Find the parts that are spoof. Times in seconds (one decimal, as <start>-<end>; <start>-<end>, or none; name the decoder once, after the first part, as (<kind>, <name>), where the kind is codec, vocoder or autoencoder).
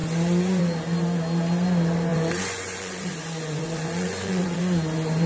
2.1-4.6 (vocoder, Vocos)